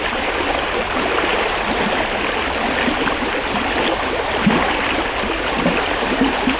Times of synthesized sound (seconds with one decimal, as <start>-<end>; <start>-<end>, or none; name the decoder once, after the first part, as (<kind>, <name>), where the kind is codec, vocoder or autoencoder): none